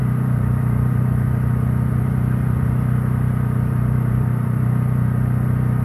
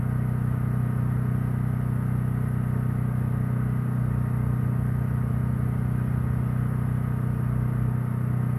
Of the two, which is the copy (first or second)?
first